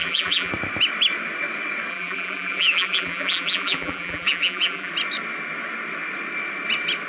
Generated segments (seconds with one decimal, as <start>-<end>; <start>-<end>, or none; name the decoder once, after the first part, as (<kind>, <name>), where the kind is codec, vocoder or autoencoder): 0.0-0.5 (vocoder, BigVGAN v2); 1.9-4.9